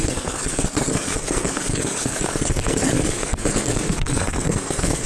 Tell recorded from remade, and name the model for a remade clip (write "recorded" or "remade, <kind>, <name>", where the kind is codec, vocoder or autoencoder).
remade, codec, SNAC